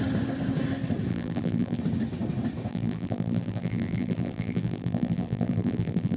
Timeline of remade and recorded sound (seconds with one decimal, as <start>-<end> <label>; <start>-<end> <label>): 0.0-1.1 recorded; 1.1-1.8 remade; 1.8-2.7 recorded; 2.7-6.2 remade